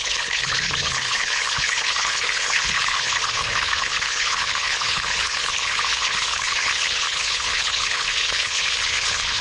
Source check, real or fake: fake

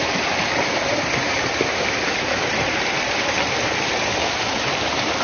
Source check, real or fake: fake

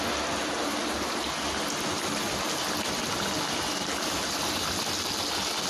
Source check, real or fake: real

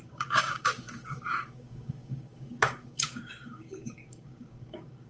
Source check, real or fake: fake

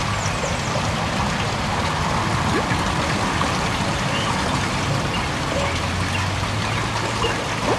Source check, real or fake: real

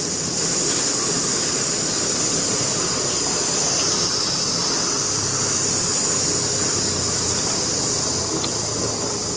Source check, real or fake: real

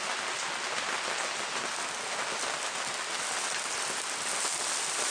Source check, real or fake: real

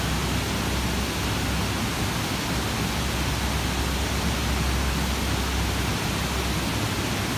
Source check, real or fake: real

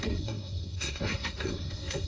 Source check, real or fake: fake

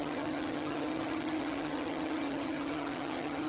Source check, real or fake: fake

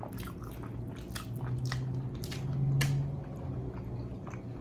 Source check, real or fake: real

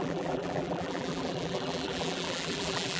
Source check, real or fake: fake